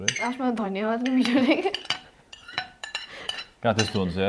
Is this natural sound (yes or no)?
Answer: no